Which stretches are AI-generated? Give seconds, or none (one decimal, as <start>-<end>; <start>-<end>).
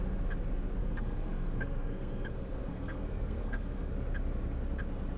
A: 0.8-3.9